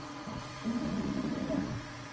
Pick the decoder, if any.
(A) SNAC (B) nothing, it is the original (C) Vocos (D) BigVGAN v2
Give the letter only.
C